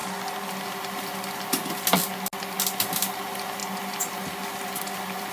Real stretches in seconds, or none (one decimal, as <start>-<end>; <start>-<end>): 0.0-5.3